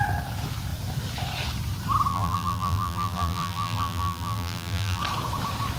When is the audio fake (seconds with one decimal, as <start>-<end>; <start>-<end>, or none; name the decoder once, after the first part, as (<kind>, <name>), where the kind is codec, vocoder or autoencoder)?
2.1-5.0 (vocoder, BigVGAN v2)